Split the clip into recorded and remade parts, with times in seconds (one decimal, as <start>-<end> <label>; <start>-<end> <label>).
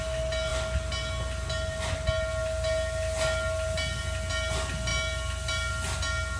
0.0-6.4 recorded